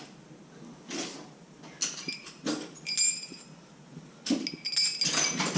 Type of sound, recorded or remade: recorded